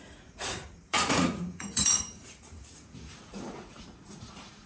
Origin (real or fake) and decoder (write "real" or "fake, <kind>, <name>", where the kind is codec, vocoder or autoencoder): fake, vocoder, Vocos